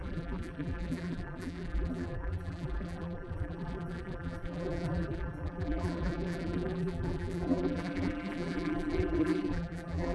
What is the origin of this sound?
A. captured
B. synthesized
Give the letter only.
B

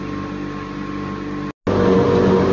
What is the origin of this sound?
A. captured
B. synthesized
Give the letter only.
A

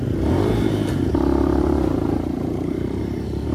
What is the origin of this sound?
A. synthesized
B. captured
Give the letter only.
A